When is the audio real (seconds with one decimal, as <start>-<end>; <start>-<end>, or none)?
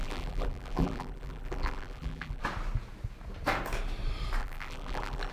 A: 2.4-4.4